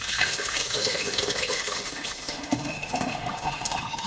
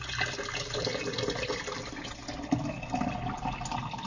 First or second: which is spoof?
first